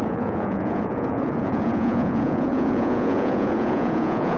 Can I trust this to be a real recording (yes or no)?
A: no